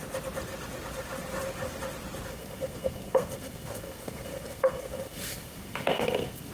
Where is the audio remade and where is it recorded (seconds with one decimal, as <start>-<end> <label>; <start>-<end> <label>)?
0.0-2.3 recorded; 2.3-6.5 remade